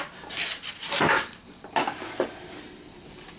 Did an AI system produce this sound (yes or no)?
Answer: no